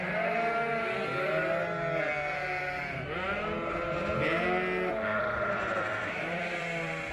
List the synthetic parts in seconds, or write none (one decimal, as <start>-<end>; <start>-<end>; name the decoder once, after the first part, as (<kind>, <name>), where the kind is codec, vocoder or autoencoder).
5.1-7.1 (vocoder, BigVGAN v2)